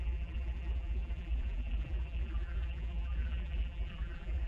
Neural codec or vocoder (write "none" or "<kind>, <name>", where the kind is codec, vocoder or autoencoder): vocoder, BigVGAN v2